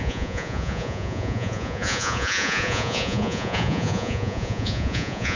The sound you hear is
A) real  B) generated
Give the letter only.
B